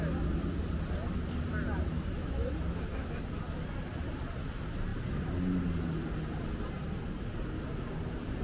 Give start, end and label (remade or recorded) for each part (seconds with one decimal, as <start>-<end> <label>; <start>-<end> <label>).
0.0-2.2 recorded; 2.2-3.1 remade; 3.1-8.4 recorded